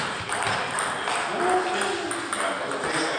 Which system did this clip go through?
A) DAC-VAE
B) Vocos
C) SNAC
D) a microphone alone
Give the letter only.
D